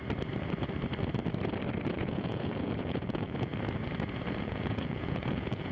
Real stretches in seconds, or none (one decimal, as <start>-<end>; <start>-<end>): 0.0-1.9; 3.5-4.4